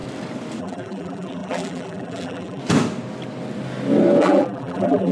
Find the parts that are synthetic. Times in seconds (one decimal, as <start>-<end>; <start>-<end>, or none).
0.6-2.6; 4.2-5.1